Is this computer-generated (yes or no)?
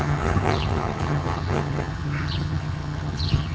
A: yes